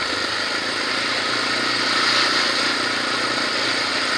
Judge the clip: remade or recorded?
recorded